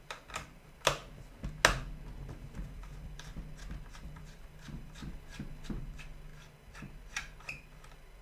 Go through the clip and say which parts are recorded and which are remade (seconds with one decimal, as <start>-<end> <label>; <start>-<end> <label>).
0.0-1.0 remade; 1.0-2.3 recorded; 2.3-3.3 remade; 3.3-4.1 recorded; 4.1-5.0 remade; 5.0-5.7 recorded; 5.7-6.3 remade; 6.3-8.2 recorded